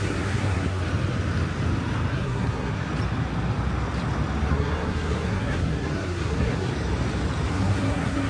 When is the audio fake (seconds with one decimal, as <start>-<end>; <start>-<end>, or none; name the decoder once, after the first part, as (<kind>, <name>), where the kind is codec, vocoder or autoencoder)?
0.0-0.8 (codec, SNAC); 2.1-2.9; 4.5-6.7; 7.5-8.3